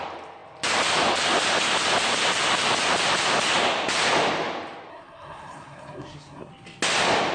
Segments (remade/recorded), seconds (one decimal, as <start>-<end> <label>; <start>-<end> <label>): 0.0-4.9 recorded; 4.9-6.5 remade; 6.5-7.3 recorded